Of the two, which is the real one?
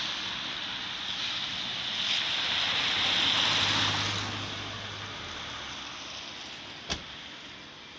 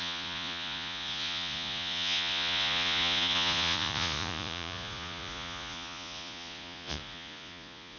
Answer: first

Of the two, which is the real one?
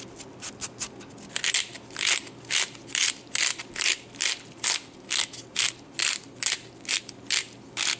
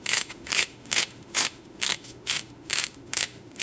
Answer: first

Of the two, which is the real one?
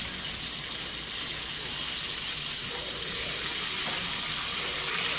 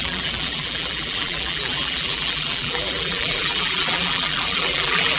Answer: first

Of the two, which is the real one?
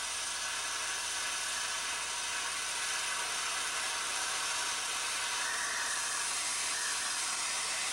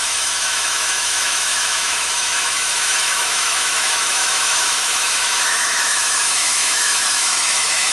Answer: first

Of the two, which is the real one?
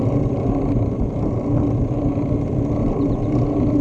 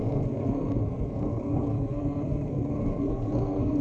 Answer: first